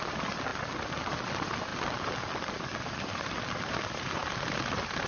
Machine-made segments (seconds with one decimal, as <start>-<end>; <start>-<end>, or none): none